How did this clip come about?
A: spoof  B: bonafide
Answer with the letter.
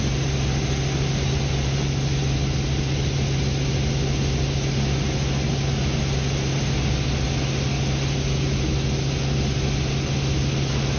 B